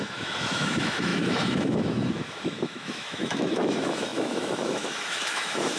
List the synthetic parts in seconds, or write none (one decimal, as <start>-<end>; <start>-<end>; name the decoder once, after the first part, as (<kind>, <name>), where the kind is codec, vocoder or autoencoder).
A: 0.0-5.8 (autoencoder, DAC-VAE)